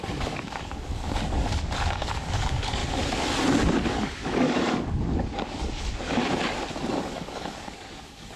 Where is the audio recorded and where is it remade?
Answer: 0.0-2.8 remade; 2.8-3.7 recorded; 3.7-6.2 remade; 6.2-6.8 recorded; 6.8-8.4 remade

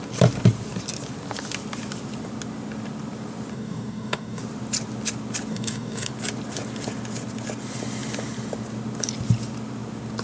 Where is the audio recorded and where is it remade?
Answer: 0.0-3.5 recorded; 3.5-4.4 remade; 4.4-5.5 recorded; 5.5-6.1 remade; 6.1-10.2 recorded

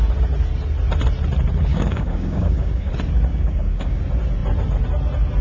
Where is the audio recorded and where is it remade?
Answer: 0.0-1.7 recorded; 1.7-2.9 remade; 2.9-3.3 recorded; 3.3-4.0 remade; 4.0-5.4 recorded

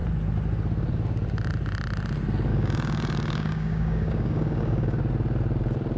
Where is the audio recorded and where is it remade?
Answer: 0.0-2.5 recorded; 2.5-5.0 remade; 5.0-6.0 recorded

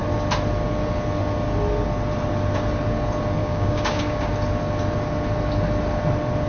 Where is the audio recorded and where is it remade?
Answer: 0.0-3.4 recorded; 3.4-4.3 remade; 4.3-6.5 recorded

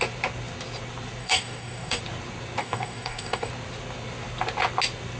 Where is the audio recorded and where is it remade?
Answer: 0.0-1.2 recorded; 1.2-2.0 remade; 2.0-2.6 recorded; 2.6-3.5 remade; 3.5-5.2 recorded

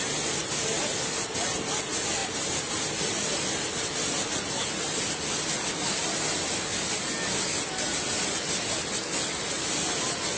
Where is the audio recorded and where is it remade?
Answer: 0.0-10.4 recorded